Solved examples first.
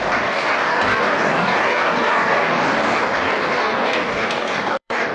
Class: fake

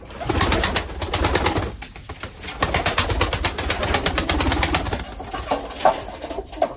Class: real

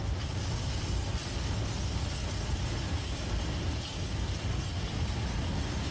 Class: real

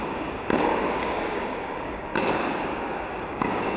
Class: fake